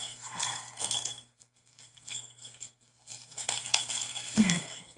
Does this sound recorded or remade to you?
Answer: remade